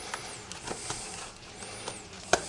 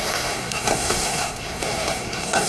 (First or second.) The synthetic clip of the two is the second